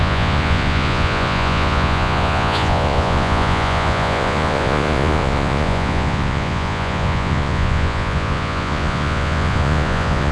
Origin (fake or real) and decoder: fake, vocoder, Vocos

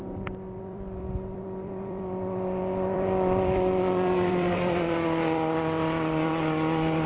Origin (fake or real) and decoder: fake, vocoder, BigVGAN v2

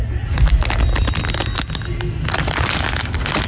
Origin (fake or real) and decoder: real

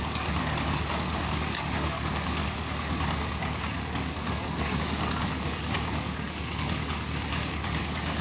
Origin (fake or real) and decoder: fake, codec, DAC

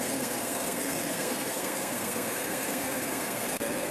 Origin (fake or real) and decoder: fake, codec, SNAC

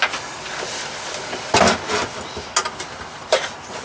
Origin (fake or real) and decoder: real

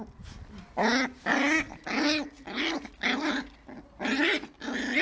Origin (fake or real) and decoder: real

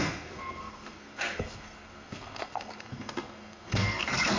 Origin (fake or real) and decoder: fake, codec, SNAC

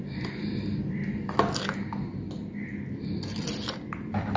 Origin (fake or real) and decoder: real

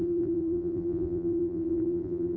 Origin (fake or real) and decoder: fake, vocoder, BigVGAN v2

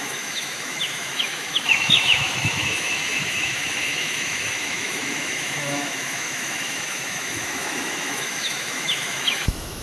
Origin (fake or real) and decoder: fake, autoencoder, DAC-VAE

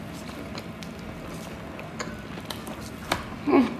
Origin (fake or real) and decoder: real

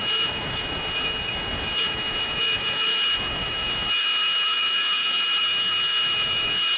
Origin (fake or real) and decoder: fake, autoencoder, DAC-VAE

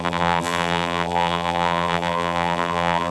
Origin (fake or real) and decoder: fake, vocoder, BigVGAN v2